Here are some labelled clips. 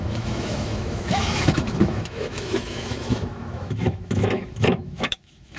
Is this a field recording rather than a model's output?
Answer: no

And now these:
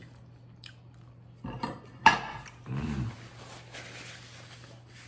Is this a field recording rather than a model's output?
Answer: yes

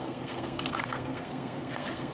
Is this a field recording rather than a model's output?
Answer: no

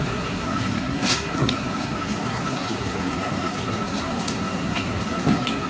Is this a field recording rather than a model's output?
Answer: no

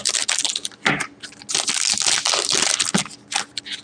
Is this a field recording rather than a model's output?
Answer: yes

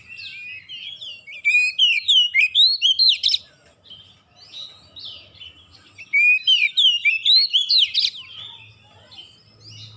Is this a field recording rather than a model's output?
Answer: yes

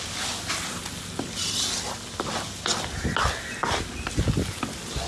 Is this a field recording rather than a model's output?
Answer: yes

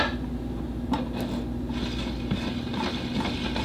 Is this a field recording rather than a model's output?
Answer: yes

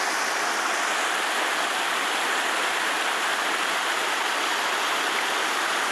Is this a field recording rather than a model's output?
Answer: yes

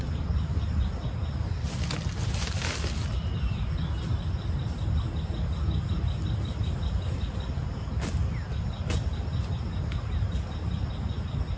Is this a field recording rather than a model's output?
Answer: yes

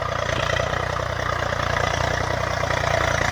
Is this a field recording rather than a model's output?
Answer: no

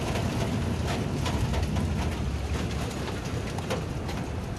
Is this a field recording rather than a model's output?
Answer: yes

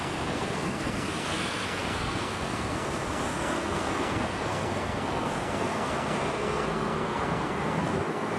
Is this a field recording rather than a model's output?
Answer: no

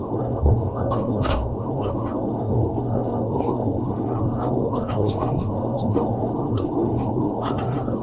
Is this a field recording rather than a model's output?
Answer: no